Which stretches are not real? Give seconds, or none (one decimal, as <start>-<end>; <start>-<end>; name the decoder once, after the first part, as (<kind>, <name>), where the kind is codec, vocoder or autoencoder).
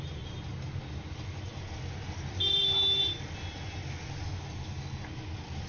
none